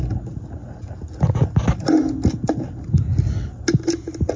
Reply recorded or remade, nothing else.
recorded